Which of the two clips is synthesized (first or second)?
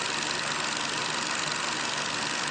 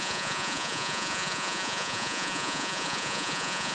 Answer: second